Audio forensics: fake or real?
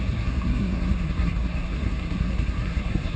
fake